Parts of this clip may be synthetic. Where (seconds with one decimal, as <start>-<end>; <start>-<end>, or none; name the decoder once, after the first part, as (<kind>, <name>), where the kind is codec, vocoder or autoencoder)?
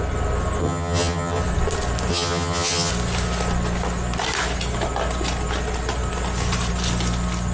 0.6-1.4 (vocoder, HiFi-GAN); 2.1-2.9